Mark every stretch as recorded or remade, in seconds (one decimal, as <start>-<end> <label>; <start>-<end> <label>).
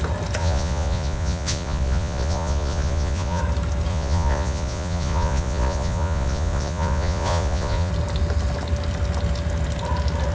0.0-0.4 recorded; 0.4-3.4 remade; 3.4-3.9 recorded; 3.9-7.9 remade; 7.9-10.3 recorded